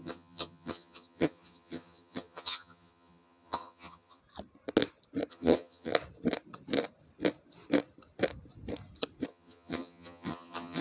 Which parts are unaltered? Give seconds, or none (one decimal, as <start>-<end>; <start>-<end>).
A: 4.2-5.3; 5.9-9.3